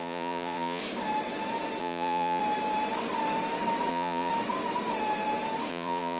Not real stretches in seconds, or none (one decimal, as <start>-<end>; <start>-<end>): 0.0-0.8; 1.8-2.4; 3.9-4.3; 5.7-6.2